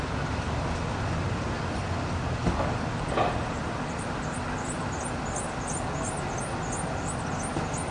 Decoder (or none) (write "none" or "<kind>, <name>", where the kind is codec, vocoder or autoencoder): none